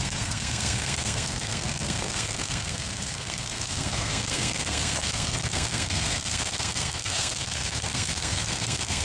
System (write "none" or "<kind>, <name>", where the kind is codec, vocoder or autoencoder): codec, SNAC